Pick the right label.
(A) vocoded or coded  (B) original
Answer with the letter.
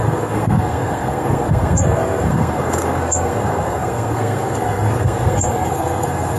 A